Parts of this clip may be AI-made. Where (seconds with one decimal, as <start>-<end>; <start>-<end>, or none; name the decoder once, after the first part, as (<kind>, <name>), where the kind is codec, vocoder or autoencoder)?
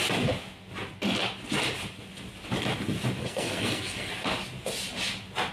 3.2-4.1 (codec, SNAC)